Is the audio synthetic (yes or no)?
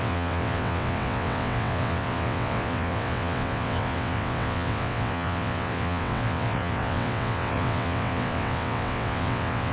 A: yes